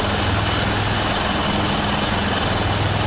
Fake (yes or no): no